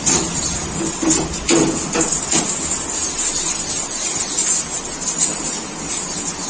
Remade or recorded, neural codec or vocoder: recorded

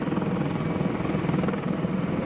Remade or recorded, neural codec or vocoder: recorded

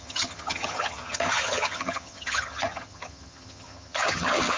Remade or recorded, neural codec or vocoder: remade, vocoder, HiFi-GAN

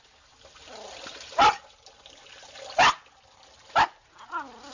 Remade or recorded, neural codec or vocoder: recorded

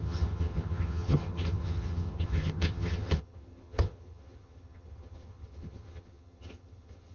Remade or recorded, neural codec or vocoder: remade, vocoder, HiFi-GAN